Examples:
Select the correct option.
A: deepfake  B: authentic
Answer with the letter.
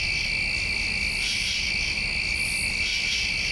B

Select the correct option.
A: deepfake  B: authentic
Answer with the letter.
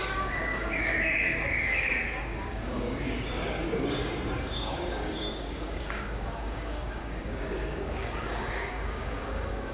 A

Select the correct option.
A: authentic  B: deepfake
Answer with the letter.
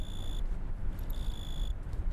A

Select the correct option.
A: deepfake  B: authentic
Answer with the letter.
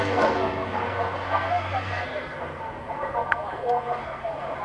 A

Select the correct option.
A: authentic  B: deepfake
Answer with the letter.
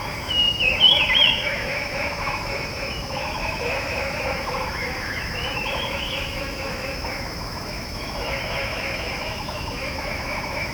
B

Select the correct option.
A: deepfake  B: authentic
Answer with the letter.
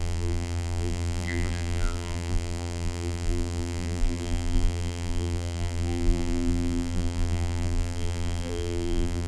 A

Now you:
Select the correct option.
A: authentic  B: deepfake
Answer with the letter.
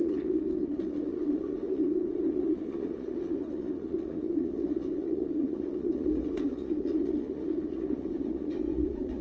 B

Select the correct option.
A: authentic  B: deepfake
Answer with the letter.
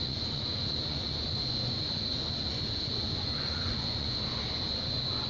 B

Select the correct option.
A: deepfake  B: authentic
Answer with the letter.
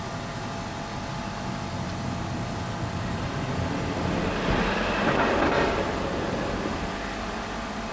B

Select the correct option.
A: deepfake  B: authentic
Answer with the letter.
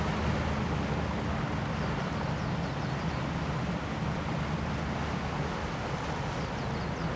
B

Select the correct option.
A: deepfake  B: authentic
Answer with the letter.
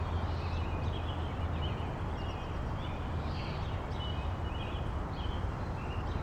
B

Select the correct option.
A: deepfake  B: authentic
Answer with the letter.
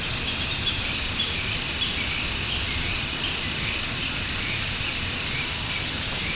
B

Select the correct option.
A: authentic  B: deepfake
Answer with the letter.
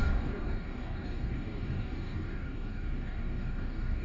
B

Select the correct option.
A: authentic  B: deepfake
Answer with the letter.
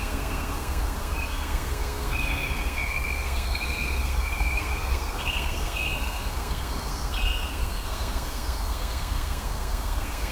B